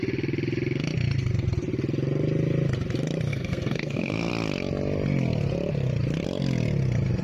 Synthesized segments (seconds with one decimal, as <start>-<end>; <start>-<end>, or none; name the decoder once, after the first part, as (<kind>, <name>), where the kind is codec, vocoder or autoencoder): 3.3-4.3 (codec, SNAC)